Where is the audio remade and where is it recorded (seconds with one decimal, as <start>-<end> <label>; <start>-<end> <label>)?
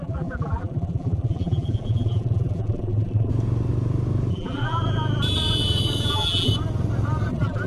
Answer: 0.0-3.3 remade; 3.3-4.3 recorded; 4.3-4.8 remade; 4.8-6.1 recorded; 6.1-6.5 remade; 6.5-7.3 recorded; 7.3-7.7 remade